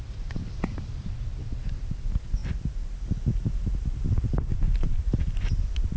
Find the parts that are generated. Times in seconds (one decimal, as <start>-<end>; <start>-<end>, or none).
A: 2.4-6.0